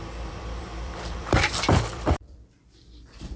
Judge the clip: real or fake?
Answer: fake